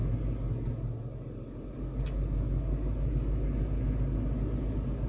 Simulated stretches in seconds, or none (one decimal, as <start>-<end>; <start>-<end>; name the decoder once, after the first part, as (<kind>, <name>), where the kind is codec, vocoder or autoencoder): none